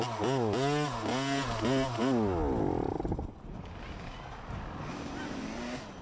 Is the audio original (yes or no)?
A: yes